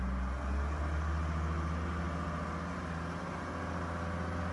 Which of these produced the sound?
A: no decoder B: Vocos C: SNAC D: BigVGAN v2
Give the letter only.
A